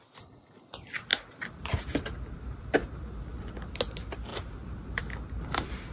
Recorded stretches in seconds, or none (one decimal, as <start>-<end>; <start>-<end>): 0.0-5.9